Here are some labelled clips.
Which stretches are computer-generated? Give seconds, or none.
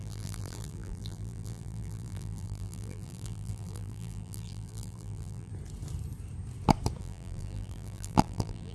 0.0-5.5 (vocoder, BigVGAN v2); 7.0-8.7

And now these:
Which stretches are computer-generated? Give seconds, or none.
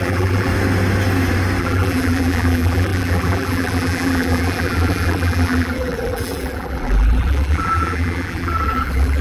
0.0-0.5 (vocoder, BigVGAN v2); 1.6-9.2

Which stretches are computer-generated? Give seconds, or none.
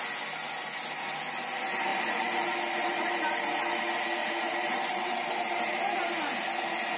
1.9-3.3 (vocoder, BigVGAN v2); 4.2-5.8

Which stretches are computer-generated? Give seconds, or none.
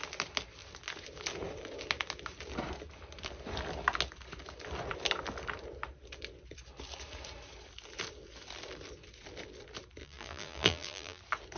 10.0-11.2 (vocoder, BigVGAN v2)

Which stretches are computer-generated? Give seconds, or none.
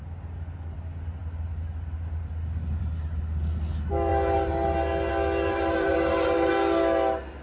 5.5-6.5 (vocoder, BigVGAN v2)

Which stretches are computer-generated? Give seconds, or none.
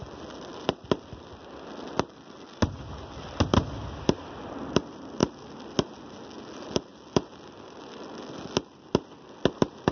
none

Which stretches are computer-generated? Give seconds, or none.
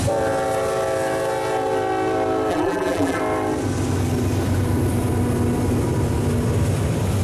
2.5-3.2 (vocoder, BigVGAN v2)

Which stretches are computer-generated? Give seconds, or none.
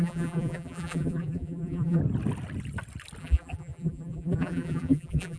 0.0-2.0 (vocoder, BigVGAN v2); 3.2-5.4